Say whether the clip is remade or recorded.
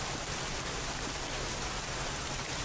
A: recorded